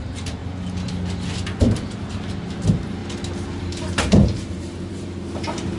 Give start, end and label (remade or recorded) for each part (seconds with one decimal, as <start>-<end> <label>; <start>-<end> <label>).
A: 0.0-0.4 remade; 0.4-1.9 recorded; 1.9-3.0 remade; 3.0-3.6 recorded; 3.6-5.8 remade